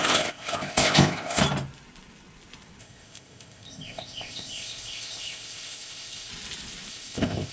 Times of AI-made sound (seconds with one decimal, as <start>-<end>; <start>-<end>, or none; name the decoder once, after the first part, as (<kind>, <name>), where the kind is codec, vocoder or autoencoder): 0.0-1.4 (codec, ZipCodec); 2.8-6.3; 6.9-7.5